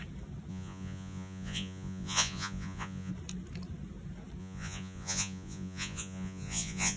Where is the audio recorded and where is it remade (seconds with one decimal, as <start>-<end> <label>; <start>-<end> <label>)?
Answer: 0.0-0.5 recorded; 0.5-3.1 remade; 3.1-4.4 recorded; 4.4-7.0 remade